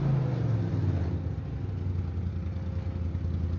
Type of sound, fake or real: real